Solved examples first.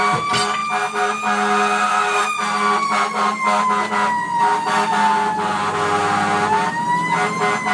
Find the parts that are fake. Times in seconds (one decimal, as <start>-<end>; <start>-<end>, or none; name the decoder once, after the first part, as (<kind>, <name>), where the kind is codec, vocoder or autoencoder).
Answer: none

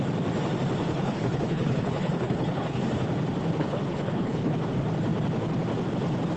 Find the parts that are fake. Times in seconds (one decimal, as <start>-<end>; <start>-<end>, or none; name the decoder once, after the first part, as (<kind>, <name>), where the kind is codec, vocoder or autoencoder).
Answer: 0.8-2.8 (codec, HILCodec); 3.5-4.5

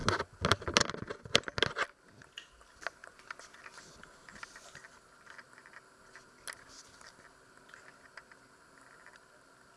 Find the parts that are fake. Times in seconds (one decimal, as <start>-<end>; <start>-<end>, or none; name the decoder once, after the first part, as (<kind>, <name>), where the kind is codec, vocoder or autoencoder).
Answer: none

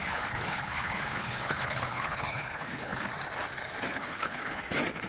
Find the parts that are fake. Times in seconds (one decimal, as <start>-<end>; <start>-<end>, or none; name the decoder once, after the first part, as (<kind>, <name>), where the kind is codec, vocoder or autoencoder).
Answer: 0.0-3.1 (codec, HILCodec); 3.9-4.6